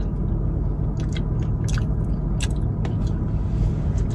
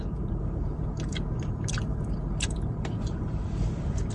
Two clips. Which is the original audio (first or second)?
first